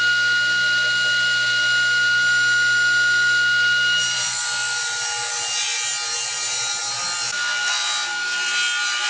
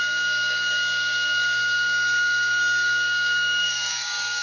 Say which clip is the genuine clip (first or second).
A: first